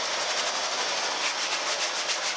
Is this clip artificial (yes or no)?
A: no